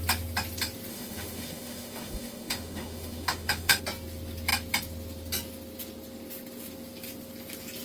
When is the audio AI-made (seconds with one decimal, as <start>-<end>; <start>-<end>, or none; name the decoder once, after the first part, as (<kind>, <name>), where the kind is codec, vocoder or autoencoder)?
0.9-3.8 (autoencoder, DAC-VAE)